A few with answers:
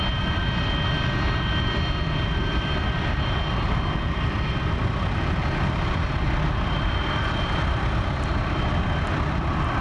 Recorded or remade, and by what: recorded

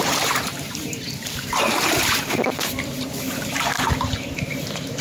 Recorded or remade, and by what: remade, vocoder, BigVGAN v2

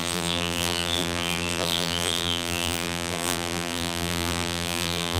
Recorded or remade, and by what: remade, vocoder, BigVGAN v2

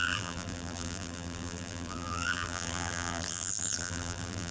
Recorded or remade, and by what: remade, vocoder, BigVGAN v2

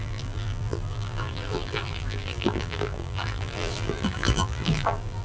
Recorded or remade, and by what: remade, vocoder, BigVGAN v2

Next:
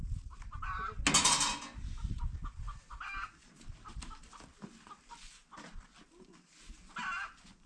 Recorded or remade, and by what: recorded